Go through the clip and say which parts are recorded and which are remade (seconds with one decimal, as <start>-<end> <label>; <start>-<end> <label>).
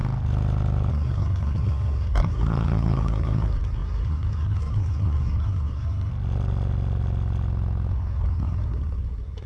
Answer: 0.0-0.9 recorded; 0.9-6.1 remade; 6.1-7.9 recorded; 7.9-9.5 remade